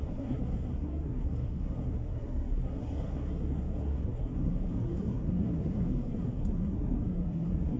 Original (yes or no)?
no